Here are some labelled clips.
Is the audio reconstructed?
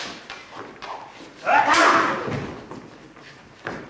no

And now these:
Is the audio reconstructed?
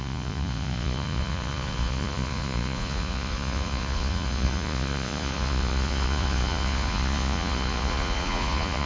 yes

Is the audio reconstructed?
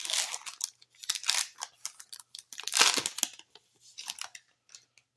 no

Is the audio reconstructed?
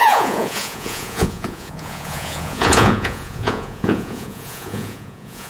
yes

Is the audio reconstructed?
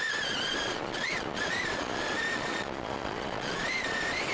yes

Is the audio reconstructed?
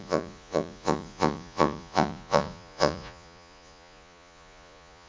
yes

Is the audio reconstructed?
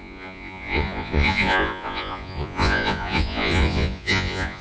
yes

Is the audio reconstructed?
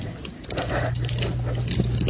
no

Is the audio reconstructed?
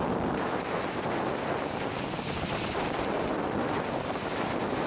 no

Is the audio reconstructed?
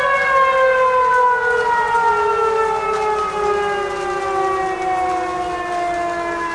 no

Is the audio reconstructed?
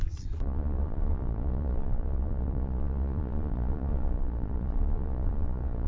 yes